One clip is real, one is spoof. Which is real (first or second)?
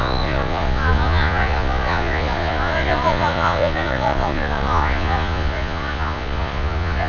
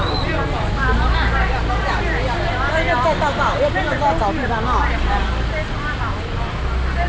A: second